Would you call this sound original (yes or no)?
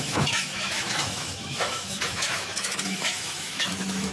no